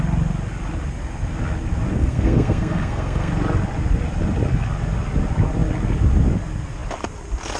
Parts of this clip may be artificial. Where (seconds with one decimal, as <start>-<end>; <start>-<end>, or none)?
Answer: 1.9-3.3